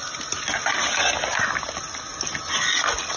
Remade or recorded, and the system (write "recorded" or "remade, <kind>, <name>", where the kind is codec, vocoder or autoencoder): recorded